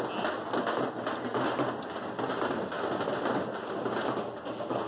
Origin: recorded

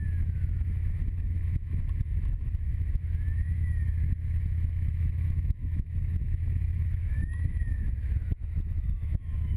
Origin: remade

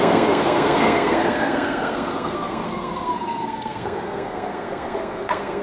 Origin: remade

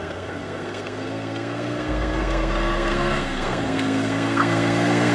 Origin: remade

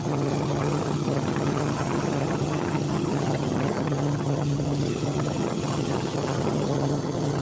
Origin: remade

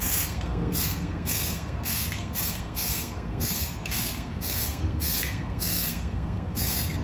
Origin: remade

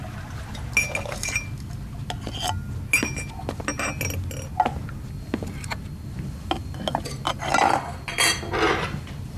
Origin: recorded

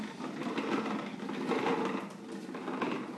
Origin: recorded